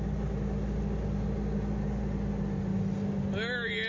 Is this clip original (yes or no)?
yes